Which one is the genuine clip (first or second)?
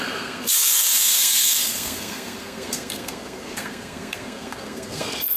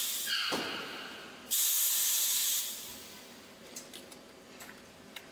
second